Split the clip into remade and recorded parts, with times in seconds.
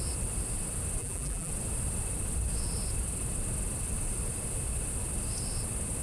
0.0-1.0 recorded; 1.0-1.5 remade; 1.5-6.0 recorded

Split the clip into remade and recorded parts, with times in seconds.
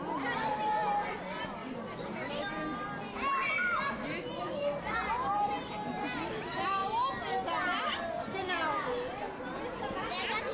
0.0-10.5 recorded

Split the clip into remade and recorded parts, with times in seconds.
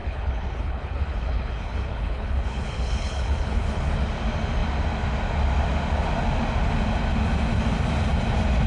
0.0-3.9 remade; 3.9-8.7 recorded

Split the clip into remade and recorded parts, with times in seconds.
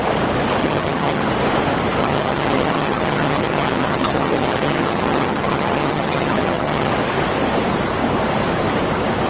0.0-0.6 recorded; 0.6-1.2 remade; 1.2-2.0 recorded; 2.0-6.9 remade; 6.9-9.3 recorded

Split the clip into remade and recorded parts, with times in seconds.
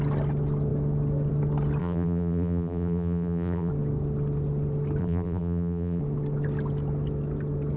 0.0-1.8 recorded; 1.8-3.7 remade; 3.7-5.0 recorded; 5.0-6.0 remade; 6.0-7.8 recorded